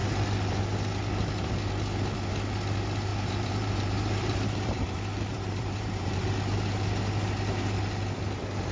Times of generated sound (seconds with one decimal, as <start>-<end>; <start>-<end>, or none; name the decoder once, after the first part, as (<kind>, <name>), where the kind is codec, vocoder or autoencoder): 3.1-6.3 (vocoder, BigVGAN v2)